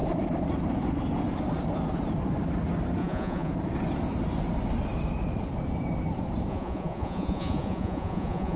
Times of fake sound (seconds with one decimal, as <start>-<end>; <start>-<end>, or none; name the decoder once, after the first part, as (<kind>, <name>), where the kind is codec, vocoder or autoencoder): 3.0-3.5 (vocoder, Vocos); 6.5-8.6